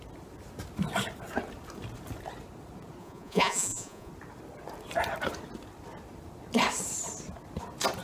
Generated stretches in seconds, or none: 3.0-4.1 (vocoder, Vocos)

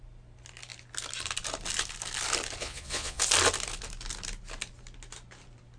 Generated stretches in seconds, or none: 2.6-3.2 (vocoder, Vocos)

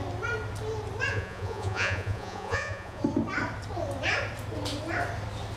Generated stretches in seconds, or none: 1.1-3.0 (vocoder, Vocos)

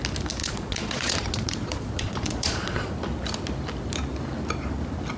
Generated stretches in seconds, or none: 0.4-2.9 (vocoder, Vocos)